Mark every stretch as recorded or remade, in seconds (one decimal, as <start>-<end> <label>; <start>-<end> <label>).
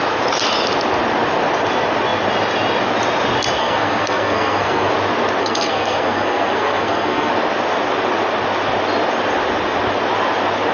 0.0-3.6 recorded; 3.6-4.9 remade; 4.9-5.4 recorded; 5.4-7.3 remade; 7.3-10.7 recorded